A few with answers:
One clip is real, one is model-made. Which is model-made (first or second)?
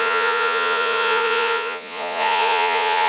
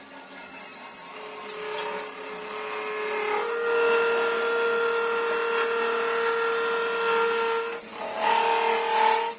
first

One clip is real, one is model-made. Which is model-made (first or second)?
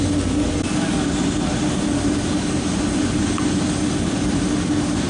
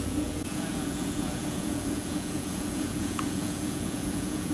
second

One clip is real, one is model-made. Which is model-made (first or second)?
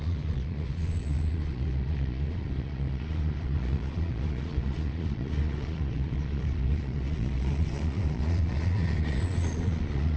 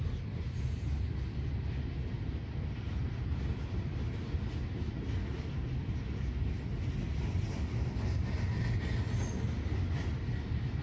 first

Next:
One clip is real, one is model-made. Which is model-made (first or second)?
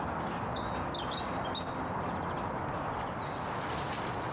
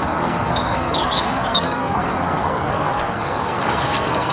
second